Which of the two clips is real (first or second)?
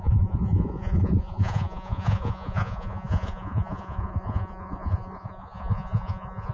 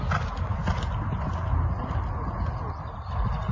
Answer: second